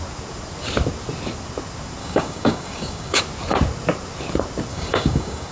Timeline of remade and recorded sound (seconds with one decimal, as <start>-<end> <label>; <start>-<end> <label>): 0.0-2.0 recorded; 2.0-3.2 remade; 3.2-4.7 recorded; 4.7-5.5 remade